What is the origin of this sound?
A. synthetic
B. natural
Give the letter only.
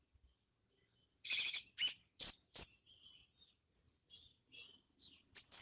A